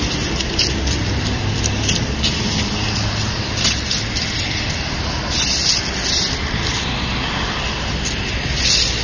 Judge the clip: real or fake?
real